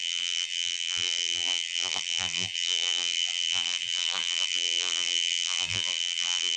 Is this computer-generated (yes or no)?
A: yes